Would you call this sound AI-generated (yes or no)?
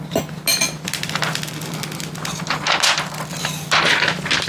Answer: no